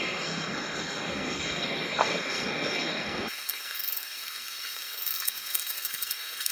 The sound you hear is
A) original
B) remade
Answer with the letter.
B